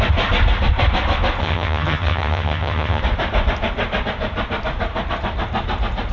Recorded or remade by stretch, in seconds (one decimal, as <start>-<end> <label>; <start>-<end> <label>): 0.0-1.4 recorded; 1.4-3.0 remade; 3.0-6.1 recorded